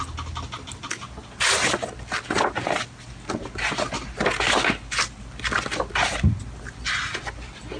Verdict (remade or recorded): recorded